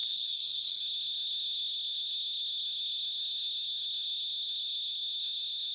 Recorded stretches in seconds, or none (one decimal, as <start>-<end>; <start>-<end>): 0.8-5.7